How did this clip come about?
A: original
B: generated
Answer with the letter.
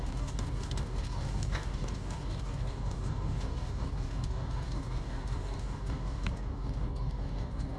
B